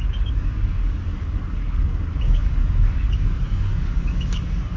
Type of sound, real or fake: fake